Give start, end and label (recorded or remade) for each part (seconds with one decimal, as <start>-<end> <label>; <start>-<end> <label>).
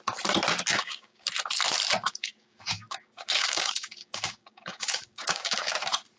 0.0-0.7 recorded; 0.7-1.3 remade; 1.3-2.0 recorded; 2.0-5.7 remade; 5.7-6.2 recorded